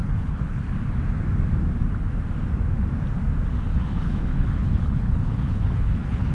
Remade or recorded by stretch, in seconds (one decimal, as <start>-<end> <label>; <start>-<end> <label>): 0.0-0.6 remade; 0.6-3.7 recorded; 3.7-6.3 remade